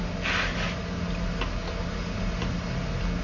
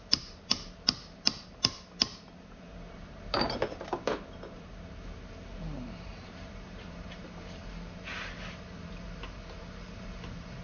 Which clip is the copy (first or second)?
second